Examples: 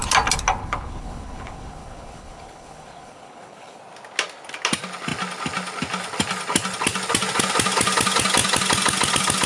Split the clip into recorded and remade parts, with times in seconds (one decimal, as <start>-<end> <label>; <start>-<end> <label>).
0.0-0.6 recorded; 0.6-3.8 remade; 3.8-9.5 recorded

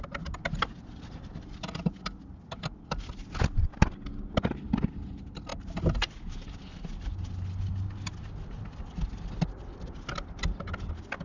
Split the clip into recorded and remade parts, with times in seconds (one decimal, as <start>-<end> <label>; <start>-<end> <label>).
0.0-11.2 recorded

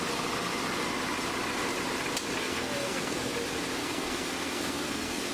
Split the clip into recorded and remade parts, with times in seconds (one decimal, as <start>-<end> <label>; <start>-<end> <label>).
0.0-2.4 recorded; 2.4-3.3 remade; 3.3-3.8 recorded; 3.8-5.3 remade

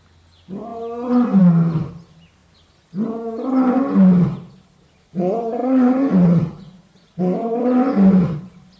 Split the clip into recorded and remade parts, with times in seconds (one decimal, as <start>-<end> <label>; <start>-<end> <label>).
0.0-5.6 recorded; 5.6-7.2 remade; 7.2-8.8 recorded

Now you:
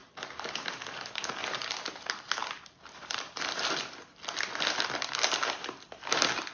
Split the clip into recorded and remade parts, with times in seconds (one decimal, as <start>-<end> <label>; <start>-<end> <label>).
0.0-2.4 recorded; 2.4-6.5 remade

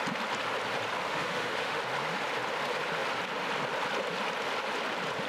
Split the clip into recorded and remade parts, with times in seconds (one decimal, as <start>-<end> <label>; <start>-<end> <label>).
0.0-1.0 recorded; 1.0-1.8 remade; 1.8-5.3 recorded

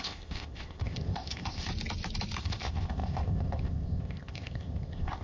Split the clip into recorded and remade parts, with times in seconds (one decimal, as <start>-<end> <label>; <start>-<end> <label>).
0.0-1.7 remade; 1.7-2.4 recorded; 2.4-5.2 remade